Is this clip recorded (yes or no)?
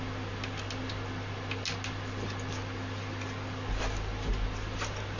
yes